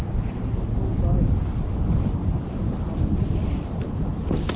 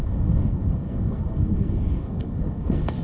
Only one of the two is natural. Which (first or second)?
first